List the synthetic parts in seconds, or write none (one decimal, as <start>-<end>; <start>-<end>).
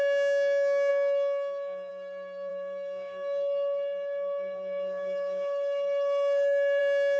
0.9-1.9; 2.5-6.8